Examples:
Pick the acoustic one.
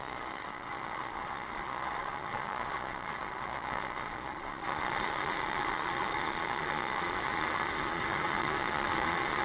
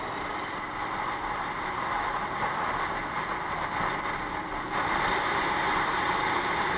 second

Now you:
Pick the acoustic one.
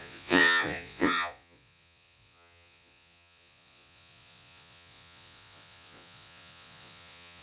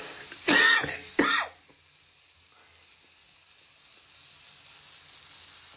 second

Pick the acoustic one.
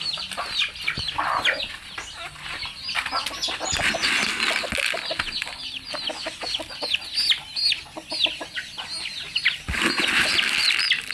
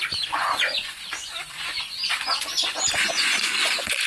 first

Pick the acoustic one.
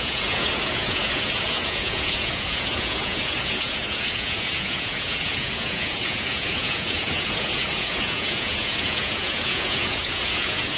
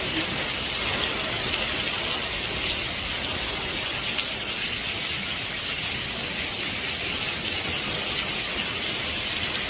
second